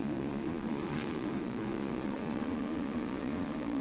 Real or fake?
fake